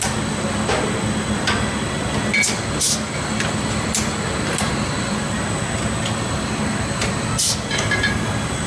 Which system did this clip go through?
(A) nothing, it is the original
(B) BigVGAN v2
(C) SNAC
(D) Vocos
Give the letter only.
A